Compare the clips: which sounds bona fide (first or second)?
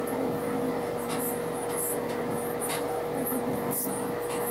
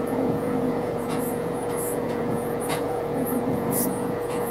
first